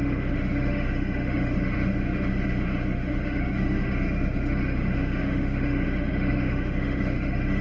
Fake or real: fake